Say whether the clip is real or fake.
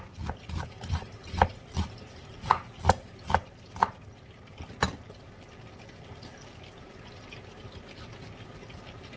real